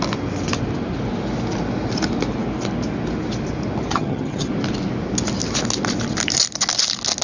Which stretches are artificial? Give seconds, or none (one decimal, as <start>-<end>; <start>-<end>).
3.9-4.5